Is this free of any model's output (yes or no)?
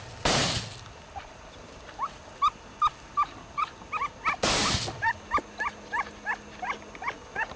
yes